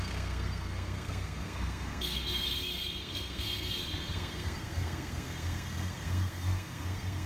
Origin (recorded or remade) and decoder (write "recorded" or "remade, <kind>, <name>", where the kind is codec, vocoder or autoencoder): remade, codec, SNAC